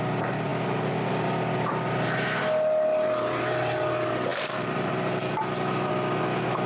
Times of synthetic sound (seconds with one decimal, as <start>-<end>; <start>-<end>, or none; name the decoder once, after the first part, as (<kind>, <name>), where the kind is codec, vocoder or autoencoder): 4.3-5.9 (vocoder, BigVGAN v2)